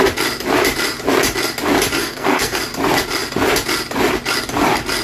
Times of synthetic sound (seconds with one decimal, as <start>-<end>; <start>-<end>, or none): 2.0-2.6